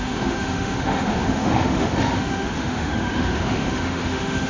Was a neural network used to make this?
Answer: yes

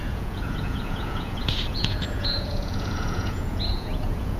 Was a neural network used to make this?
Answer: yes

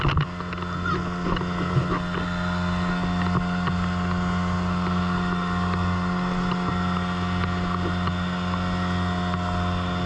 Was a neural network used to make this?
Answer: no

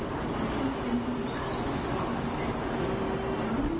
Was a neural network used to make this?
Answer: no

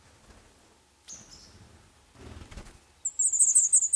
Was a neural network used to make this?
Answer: no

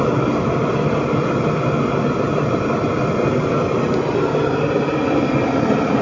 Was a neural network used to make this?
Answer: no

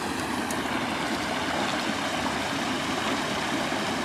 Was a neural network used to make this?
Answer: no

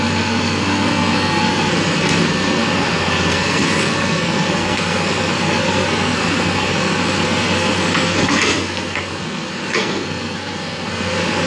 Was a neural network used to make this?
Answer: yes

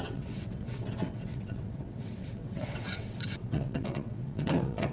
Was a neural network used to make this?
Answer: yes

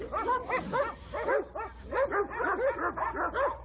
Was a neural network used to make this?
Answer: no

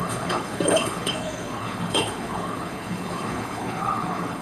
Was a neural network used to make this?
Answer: yes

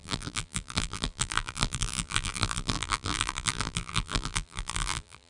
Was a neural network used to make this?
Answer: yes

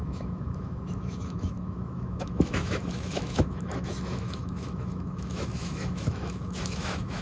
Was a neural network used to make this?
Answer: yes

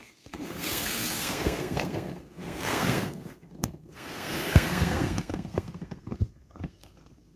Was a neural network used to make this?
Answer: yes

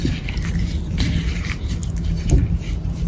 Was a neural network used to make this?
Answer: no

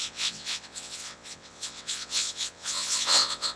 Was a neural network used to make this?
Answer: yes